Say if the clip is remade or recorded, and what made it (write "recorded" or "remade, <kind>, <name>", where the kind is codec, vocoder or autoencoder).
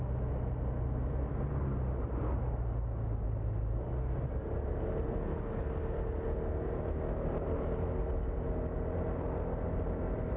recorded